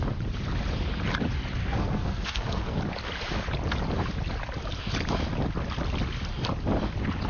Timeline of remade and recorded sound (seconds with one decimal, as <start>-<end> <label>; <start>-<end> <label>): 0.0-1.6 recorded; 1.6-2.8 remade; 2.8-7.3 recorded